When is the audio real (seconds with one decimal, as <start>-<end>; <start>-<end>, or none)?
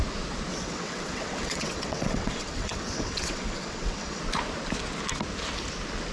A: 0.0-0.5; 4.2-6.1